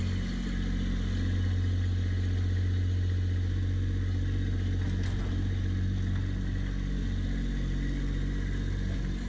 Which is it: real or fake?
real